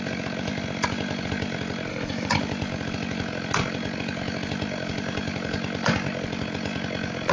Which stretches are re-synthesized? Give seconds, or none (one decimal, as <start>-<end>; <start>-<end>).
1.9-2.4